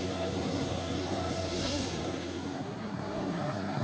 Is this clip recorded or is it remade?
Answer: remade